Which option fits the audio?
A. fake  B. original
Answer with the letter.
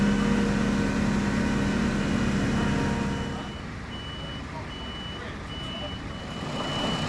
B